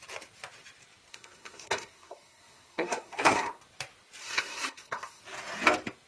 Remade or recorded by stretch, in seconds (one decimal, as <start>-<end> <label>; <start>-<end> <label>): 0.0-1.1 recorded; 1.1-3.6 remade; 3.6-4.2 recorded; 4.2-5.2 remade; 5.2-6.1 recorded